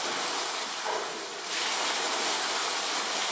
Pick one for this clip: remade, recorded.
recorded